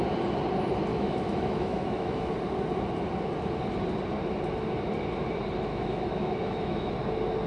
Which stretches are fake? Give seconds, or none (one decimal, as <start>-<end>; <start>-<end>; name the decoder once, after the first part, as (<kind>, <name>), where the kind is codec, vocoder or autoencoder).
0.9-2.3 (autoencoder, DAC-VAE); 5.7-6.9